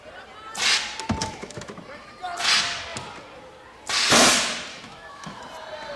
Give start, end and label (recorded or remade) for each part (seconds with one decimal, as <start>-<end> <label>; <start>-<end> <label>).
0.0-1.2 recorded; 1.2-1.7 remade; 1.7-4.7 recorded; 4.7-5.4 remade; 5.4-6.0 recorded